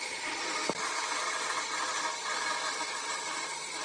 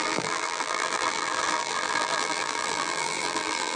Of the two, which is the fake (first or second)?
second